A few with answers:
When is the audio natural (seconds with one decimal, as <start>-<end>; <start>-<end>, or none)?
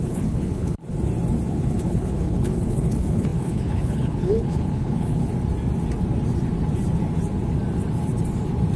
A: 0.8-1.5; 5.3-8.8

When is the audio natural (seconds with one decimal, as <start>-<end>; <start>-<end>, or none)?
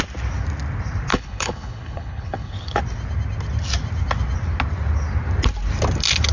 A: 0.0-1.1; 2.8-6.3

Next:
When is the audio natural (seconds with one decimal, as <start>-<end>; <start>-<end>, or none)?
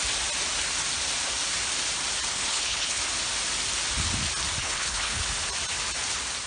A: 0.0-2.3; 3.0-4.6; 5.2-6.5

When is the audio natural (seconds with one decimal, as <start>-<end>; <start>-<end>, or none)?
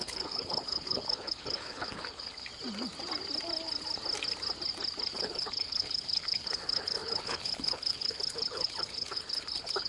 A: 2.5-5.1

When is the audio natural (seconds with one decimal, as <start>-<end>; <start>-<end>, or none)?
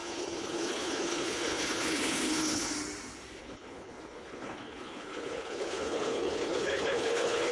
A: 2.7-3.4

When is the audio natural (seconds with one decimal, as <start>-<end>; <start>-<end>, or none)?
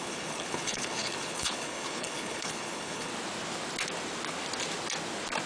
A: 3.1-5.5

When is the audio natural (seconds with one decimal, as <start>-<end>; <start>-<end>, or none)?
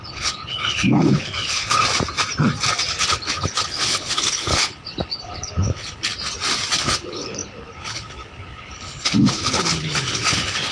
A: 1.8-2.9; 6.1-6.8